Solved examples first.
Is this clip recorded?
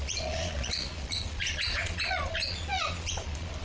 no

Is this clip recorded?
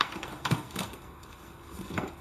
no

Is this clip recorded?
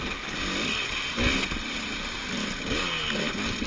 yes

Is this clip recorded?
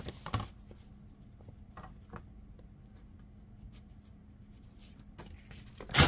yes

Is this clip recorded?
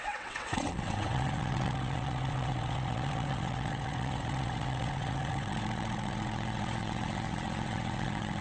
no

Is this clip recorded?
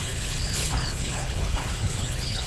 no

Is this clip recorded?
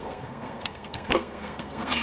no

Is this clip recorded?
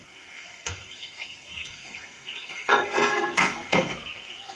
no